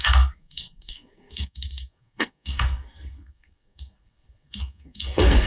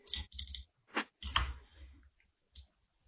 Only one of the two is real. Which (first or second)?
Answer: second